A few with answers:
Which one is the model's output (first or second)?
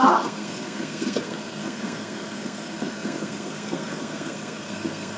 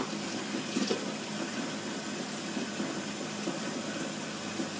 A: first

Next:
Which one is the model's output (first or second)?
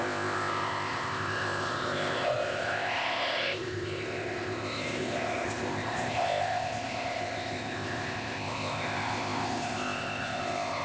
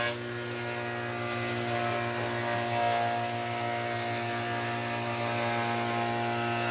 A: first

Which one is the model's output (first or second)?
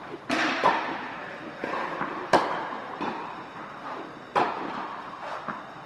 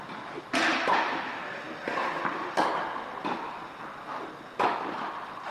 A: first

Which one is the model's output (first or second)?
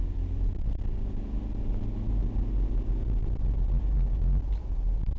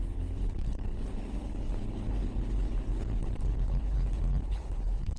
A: second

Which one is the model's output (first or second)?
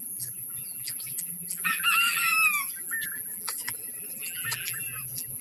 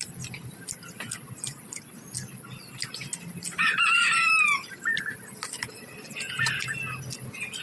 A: first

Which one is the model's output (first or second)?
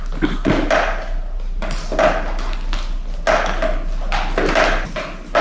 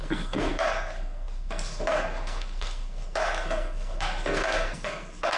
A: second